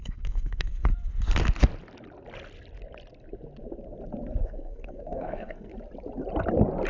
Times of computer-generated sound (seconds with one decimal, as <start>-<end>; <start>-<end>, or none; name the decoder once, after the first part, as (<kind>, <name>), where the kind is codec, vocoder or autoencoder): 0.0-0.9 (codec, SNAC); 4.4-5.7